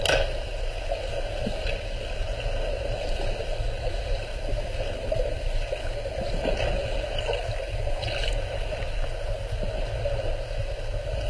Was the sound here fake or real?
real